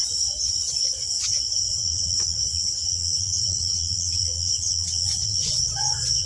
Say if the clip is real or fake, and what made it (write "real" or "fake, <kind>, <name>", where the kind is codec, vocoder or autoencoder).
fake, vocoder, Vocos